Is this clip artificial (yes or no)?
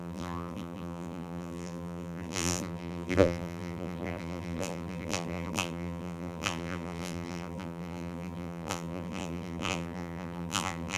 yes